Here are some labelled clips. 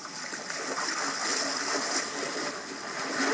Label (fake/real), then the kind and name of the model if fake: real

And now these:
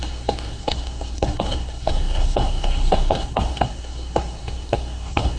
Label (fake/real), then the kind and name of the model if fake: fake, codec, SNAC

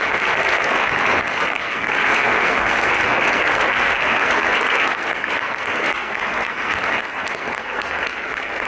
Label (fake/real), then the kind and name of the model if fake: fake, codec, SNAC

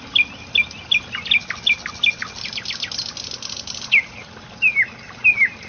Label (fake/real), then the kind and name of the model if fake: real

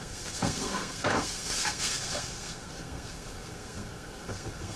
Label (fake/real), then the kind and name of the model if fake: fake, codec, SNAC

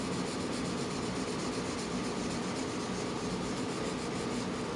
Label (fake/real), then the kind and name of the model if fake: real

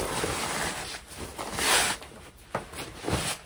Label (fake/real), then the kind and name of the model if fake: real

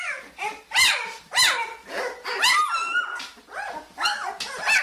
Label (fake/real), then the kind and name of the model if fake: real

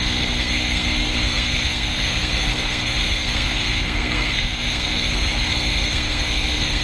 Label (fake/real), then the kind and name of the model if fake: fake, codec, SNAC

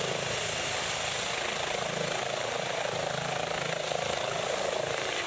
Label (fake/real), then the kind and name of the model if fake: real